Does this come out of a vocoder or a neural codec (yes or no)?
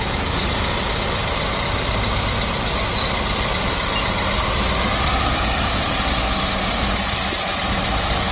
no